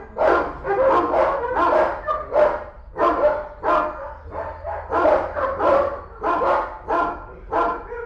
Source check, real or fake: real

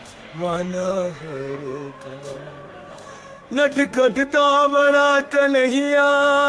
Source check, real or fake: fake